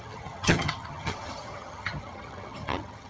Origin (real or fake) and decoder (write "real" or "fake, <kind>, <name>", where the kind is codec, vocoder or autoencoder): fake, vocoder, HiFi-GAN